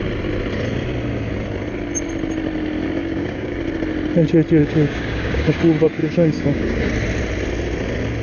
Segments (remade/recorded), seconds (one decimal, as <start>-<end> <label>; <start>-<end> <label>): 0.0-3.0 recorded; 3.0-3.6 remade; 3.6-4.6 recorded; 4.6-5.6 remade; 5.6-6.0 recorded; 6.0-6.9 remade; 6.9-8.2 recorded